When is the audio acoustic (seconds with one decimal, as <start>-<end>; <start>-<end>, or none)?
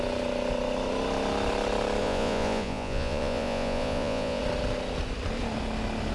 0.0-2.0; 4.4-6.1